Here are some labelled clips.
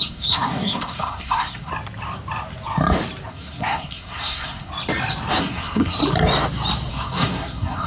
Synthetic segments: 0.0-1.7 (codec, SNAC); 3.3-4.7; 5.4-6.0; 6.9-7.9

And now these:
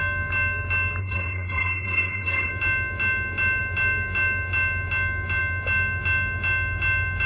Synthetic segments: 1.0-2.5 (codec, SNAC)

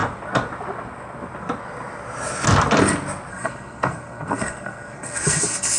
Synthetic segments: 3.3-5.8 (codec, SNAC)

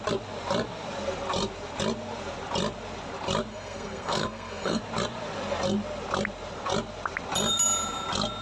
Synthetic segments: 3.5-4.8 (codec, SNAC)

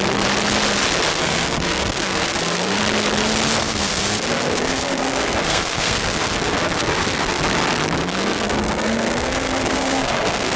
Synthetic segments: 1.1-2.8 (codec, SNAC); 3.6-7.4; 8.0-10.6